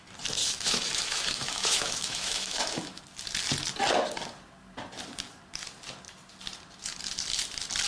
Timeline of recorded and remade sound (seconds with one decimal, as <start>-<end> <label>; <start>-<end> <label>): 0.0-0.4 recorded; 0.4-3.0 remade; 3.0-7.9 recorded